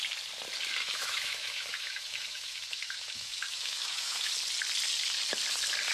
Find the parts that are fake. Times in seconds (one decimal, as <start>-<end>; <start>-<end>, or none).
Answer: 0.8-4.3